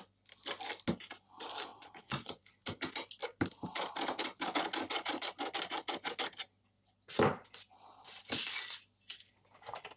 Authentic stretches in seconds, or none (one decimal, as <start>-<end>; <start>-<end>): 0.0-1.7; 2.4-10.0